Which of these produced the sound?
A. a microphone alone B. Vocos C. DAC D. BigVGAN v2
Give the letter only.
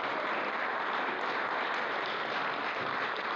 A